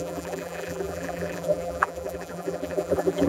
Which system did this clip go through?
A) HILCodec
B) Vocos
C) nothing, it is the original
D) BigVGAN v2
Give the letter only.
D